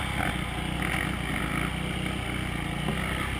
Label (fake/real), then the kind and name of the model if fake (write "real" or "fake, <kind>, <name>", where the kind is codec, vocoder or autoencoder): real